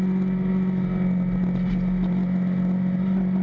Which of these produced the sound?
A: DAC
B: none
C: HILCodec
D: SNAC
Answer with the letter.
B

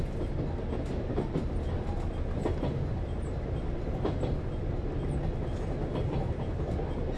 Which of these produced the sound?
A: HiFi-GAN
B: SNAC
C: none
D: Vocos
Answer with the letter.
C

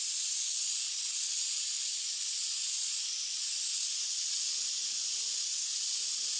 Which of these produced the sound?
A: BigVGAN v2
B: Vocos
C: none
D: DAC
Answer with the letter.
C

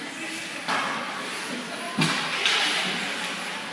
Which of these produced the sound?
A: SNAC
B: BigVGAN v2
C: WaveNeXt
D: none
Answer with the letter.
D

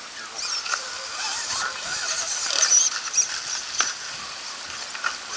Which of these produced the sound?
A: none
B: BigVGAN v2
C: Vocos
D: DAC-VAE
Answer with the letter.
A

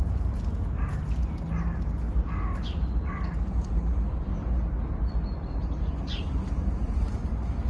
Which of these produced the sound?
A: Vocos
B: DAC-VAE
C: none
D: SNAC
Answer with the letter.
C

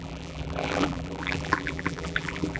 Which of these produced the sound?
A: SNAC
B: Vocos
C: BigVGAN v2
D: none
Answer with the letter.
C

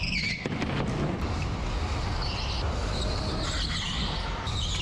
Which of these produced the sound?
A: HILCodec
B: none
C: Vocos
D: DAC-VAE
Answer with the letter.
B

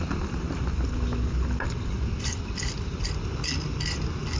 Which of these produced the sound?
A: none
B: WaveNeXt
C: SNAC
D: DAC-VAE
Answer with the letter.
A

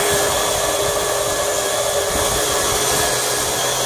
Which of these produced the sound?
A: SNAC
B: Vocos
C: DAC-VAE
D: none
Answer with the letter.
D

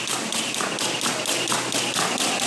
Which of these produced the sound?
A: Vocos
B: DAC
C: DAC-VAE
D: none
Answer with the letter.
D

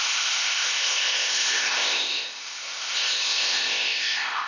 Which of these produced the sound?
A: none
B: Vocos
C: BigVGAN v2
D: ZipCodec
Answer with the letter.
D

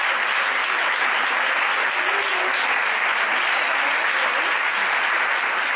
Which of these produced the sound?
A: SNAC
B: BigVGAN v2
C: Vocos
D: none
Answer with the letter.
D